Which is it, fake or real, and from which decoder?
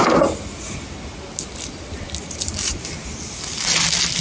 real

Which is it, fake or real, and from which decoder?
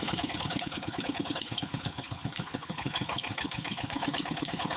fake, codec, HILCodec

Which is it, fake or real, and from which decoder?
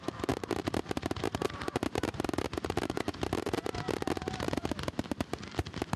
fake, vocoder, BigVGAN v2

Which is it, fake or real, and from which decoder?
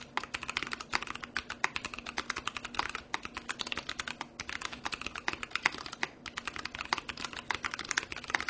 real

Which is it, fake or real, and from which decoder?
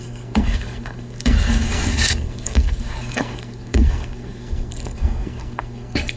fake, codec, SNAC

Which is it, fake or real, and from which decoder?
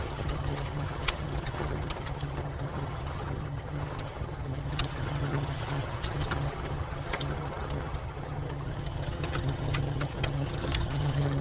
fake, vocoder, HiFi-GAN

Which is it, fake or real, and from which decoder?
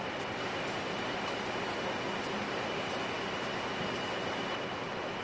real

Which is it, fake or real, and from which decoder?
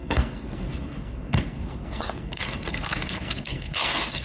fake, codec, SNAC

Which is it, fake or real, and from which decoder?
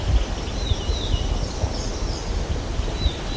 real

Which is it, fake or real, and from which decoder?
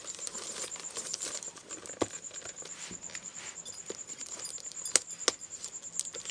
real